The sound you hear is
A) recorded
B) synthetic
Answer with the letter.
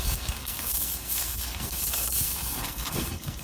B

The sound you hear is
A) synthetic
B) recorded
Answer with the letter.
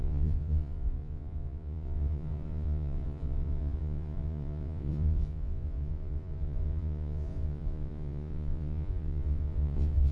A